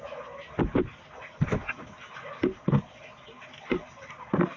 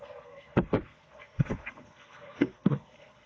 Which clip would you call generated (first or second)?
second